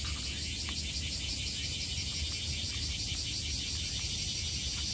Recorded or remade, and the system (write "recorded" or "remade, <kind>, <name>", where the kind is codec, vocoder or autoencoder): recorded